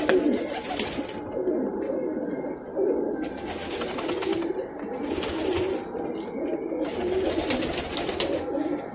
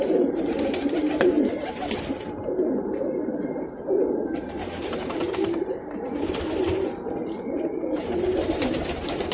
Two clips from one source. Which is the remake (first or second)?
second